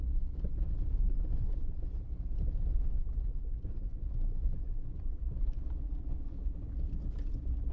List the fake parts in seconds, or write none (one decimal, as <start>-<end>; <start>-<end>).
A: 3.9-5.2